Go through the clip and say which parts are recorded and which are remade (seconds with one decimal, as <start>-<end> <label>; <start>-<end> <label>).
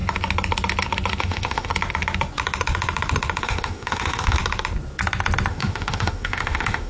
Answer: 0.0-1.2 recorded; 1.2-1.7 remade; 1.7-3.4 recorded; 3.4-4.4 remade; 4.4-5.5 recorded; 5.5-6.9 remade